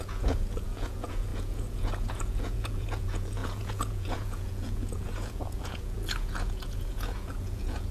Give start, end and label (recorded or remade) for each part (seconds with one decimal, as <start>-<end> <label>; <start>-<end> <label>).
0.0-7.9 remade